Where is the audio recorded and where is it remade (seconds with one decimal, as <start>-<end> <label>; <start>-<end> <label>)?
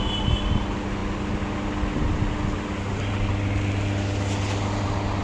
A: 0.0-5.2 recorded